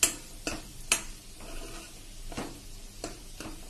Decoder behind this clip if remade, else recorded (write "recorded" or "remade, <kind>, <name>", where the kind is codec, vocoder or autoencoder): recorded